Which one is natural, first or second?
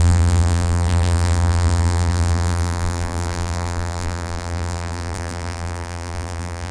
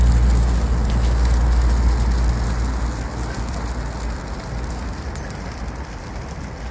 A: second